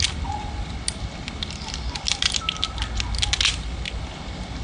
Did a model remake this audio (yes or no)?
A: no